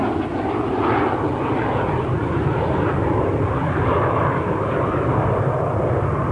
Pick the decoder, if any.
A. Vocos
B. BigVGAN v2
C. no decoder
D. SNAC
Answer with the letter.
C